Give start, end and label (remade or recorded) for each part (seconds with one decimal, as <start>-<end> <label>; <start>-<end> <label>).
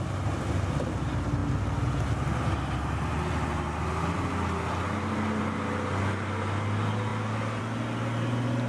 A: 0.0-8.7 recorded